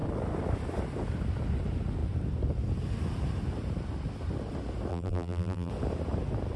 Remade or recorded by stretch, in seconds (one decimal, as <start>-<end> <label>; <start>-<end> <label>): 0.0-4.9 recorded; 4.9-5.7 remade; 5.7-6.6 recorded